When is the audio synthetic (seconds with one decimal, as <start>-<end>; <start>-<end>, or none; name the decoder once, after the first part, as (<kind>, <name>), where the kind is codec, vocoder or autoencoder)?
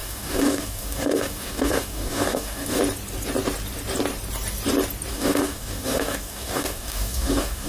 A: 0.0-2.8 (codec, DAC); 5.1-7.7